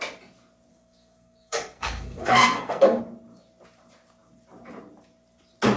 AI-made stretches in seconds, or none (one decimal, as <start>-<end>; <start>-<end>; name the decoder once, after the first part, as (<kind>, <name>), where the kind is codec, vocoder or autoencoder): 0.7-3.0 (codec, SNAC)